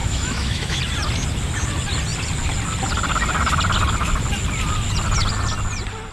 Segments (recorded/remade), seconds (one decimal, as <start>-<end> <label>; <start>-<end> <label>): 0.0-0.8 remade; 0.8-6.1 recorded